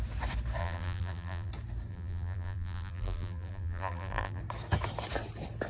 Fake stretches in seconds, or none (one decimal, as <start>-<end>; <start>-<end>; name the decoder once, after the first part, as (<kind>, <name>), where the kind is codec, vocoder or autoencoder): 0.6-1.5 (vocoder, BigVGAN v2); 1.9-4.4